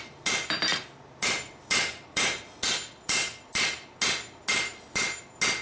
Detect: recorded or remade recorded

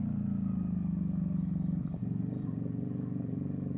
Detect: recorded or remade recorded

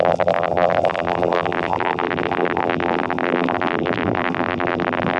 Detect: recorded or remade remade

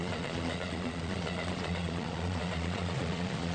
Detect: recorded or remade remade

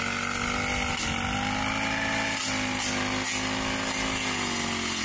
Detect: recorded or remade recorded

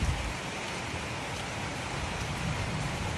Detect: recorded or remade remade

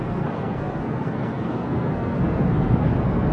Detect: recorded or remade remade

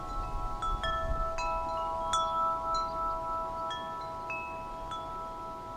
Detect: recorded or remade recorded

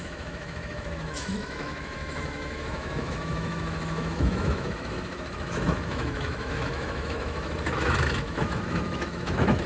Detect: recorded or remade remade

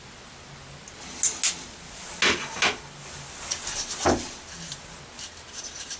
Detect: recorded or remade recorded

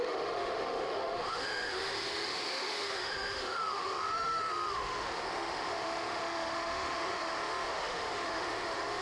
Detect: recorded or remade remade